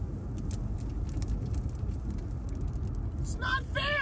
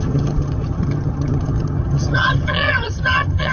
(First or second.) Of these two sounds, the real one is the first